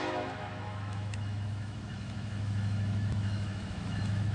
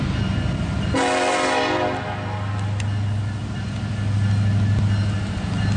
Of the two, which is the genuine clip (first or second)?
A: second